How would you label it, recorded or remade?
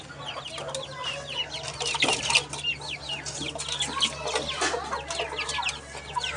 recorded